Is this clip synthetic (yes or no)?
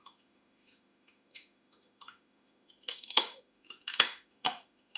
yes